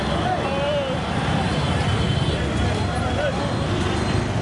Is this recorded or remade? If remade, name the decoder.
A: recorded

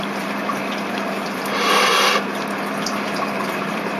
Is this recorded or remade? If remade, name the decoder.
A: remade, vocoder, BigVGAN v2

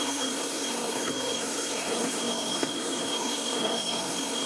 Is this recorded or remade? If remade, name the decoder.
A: remade, codec, SNAC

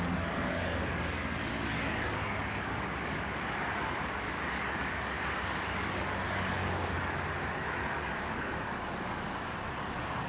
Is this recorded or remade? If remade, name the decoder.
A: remade, codec, DAC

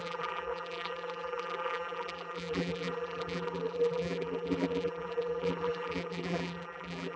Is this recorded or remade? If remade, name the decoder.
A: remade, vocoder, BigVGAN v2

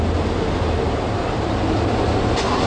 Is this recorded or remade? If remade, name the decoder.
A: recorded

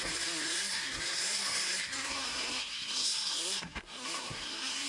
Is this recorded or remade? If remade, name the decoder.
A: remade, codec, SNAC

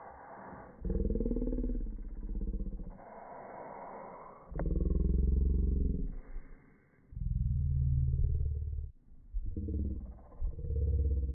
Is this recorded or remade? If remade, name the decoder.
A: recorded